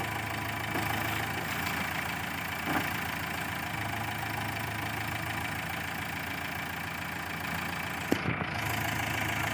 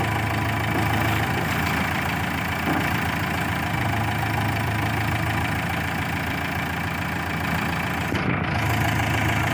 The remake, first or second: second